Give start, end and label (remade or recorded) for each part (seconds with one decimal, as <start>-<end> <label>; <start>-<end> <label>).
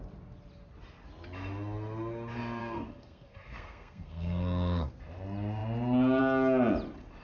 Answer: 0.0-2.6 recorded; 2.6-4.9 remade; 4.9-7.2 recorded